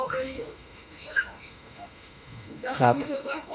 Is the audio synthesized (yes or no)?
yes